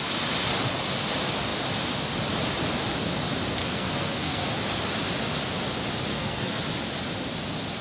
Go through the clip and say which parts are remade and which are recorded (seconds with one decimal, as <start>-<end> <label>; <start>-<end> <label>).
0.0-3.6 recorded; 3.6-4.5 remade; 4.5-6.1 recorded; 6.1-6.6 remade; 6.6-7.8 recorded